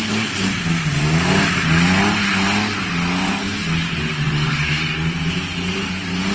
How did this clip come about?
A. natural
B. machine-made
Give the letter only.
A